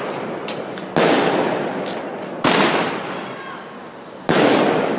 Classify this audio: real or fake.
real